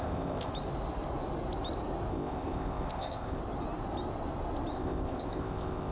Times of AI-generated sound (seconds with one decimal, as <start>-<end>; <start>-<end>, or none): 0.0-0.5; 2.1-3.4; 4.7-5.9